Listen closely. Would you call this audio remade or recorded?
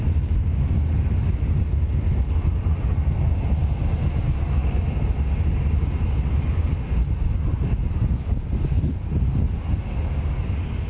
recorded